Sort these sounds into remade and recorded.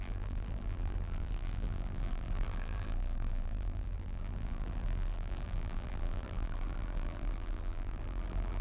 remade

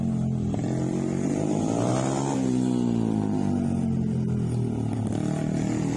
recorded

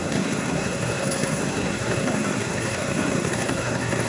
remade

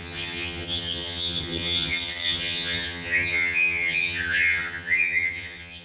remade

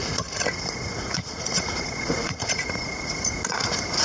remade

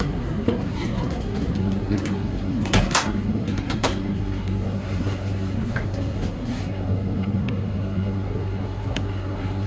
remade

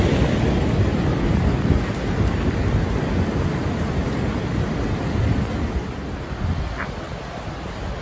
recorded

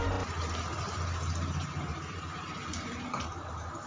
remade